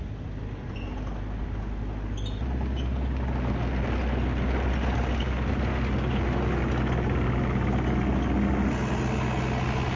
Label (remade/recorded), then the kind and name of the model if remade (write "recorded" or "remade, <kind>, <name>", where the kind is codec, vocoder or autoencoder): recorded